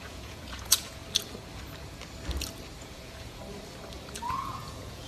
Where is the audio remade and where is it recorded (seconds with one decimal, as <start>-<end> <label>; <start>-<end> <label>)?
0.0-1.0 remade; 1.0-2.8 recorded; 2.8-3.4 remade; 3.4-4.3 recorded; 4.3-5.1 remade